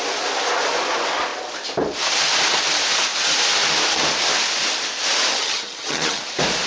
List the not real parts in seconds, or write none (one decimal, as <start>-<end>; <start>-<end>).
5.3-6.2